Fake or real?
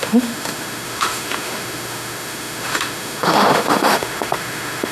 fake